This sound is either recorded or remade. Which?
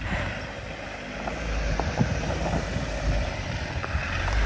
remade